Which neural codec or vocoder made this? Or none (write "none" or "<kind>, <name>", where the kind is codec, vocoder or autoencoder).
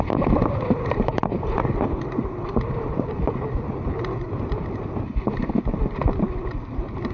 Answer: none